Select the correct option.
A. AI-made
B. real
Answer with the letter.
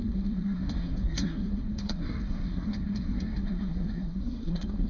A